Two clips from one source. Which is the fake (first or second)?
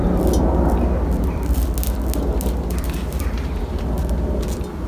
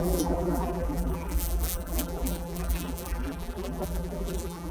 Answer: second